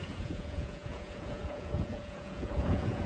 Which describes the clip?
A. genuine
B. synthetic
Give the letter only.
B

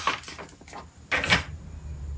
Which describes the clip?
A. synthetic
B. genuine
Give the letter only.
B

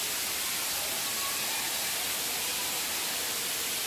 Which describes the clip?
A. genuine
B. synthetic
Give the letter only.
A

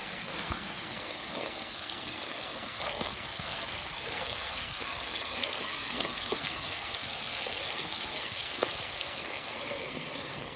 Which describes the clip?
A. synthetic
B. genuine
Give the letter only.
A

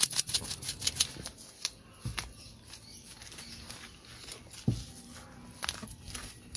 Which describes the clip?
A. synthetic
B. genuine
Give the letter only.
B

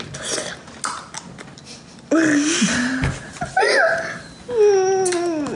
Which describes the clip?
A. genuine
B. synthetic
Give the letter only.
A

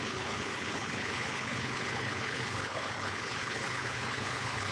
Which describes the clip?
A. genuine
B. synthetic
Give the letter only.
B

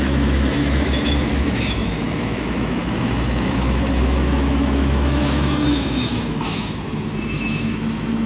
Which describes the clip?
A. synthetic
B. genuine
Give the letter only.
A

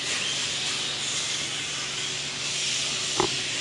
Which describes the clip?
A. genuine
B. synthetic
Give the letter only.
A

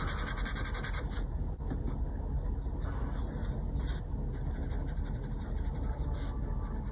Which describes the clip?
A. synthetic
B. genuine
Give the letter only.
B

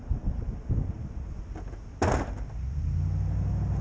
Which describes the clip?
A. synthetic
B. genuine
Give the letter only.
B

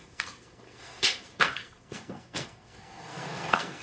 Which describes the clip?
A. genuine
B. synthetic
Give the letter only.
B